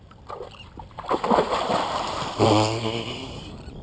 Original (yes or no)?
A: no